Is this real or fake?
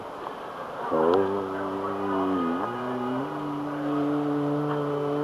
real